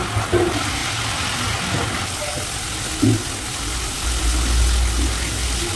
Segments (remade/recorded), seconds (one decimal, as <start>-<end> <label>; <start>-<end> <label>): 0.0-5.8 recorded